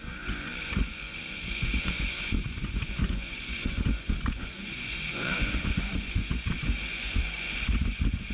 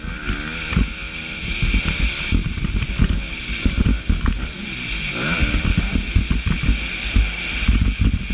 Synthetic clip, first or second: first